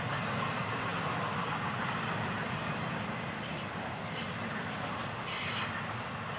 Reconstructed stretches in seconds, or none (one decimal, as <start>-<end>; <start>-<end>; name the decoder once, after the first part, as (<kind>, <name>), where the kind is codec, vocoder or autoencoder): 3.5-5.2 (vocoder, BigVGAN v2)